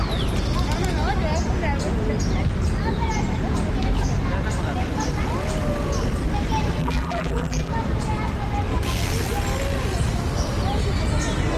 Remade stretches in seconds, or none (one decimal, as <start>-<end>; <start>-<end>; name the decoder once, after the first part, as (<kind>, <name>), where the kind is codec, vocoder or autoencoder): 6.8-7.7 (vocoder, BigVGAN v2)